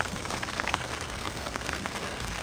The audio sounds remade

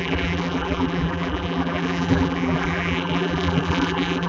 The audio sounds remade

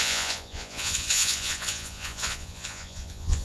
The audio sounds remade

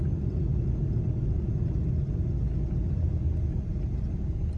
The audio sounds recorded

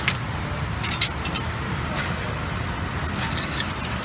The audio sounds recorded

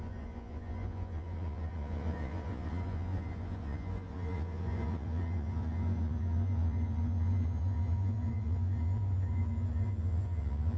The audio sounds remade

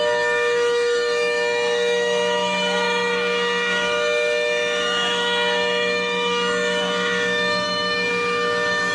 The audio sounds remade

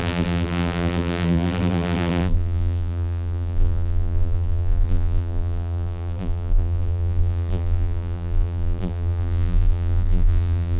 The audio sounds remade